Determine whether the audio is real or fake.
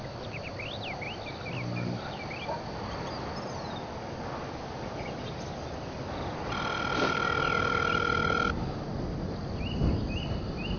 real